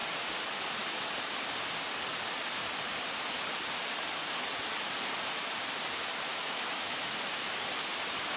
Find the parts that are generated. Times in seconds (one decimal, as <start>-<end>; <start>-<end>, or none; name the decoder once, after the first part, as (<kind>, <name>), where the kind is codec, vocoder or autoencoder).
6.3-7.0 (autoencoder, DAC-VAE)